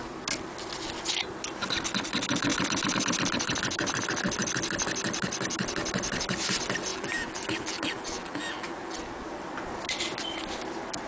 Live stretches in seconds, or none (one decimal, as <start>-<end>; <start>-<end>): 0.0-6.9; 9.0-11.1